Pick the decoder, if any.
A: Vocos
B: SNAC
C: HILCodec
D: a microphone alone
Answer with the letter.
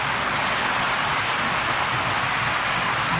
D